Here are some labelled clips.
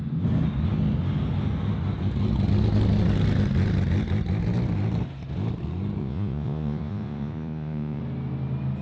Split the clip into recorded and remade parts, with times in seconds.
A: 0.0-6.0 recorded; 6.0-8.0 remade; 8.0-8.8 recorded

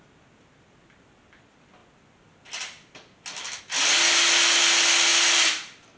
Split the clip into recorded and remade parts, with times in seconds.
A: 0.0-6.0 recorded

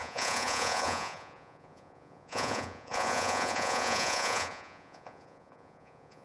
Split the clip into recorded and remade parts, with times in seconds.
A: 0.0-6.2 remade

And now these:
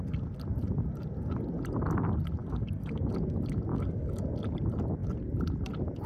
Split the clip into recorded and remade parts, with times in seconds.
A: 0.0-2.4 recorded; 2.4-3.1 remade; 3.1-3.7 recorded; 3.7-4.2 remade; 4.2-6.1 recorded

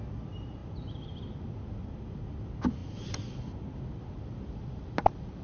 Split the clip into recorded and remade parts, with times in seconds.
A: 0.0-5.4 recorded

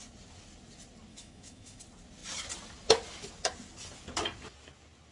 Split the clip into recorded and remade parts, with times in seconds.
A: 0.0-1.1 recorded; 1.1-1.8 remade; 1.8-5.1 recorded

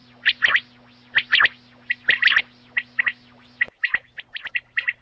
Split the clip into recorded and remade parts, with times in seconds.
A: 0.0-5.0 recorded